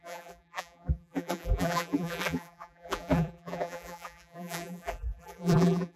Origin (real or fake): fake